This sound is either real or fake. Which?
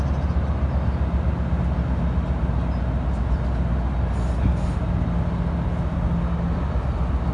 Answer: real